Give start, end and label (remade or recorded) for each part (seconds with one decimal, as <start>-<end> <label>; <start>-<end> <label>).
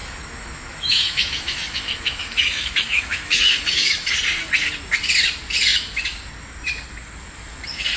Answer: 0.0-4.1 remade; 4.1-8.0 recorded